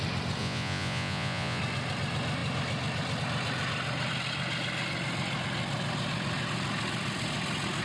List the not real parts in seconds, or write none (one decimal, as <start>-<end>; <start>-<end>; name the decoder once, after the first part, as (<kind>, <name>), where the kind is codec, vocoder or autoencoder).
0.4-1.6 (vocoder, Vocos)